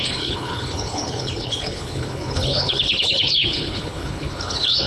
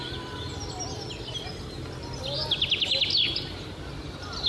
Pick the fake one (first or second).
first